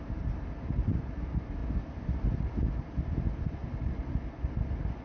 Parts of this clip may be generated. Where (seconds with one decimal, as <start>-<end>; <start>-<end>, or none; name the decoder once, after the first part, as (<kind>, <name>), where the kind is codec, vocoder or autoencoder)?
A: none